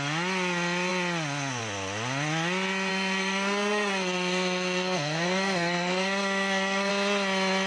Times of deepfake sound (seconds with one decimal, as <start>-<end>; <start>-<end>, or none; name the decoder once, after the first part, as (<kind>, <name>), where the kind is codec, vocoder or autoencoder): 2.9-6.9 (codec, SNAC)